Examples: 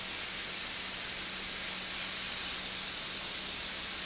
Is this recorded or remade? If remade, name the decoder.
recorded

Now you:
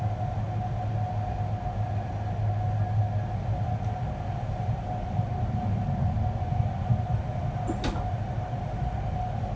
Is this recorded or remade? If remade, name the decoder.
recorded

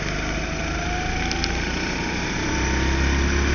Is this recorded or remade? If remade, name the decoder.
recorded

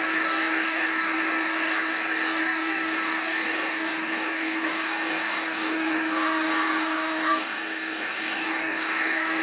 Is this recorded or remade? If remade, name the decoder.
remade, codec, DAC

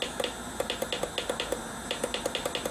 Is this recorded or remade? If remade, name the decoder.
recorded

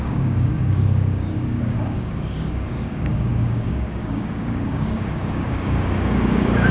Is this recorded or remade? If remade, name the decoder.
remade, codec, DAC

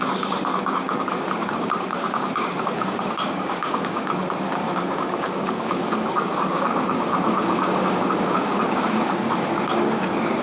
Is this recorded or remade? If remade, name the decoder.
remade, codec, DAC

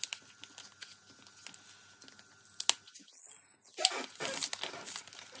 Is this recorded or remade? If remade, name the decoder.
recorded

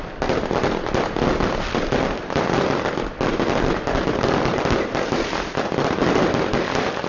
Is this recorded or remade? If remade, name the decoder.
recorded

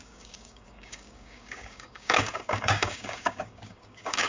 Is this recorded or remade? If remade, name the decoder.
remade, codec, DAC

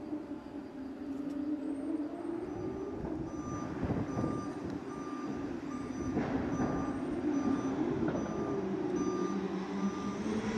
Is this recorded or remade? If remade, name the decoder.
recorded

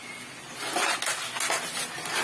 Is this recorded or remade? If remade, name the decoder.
recorded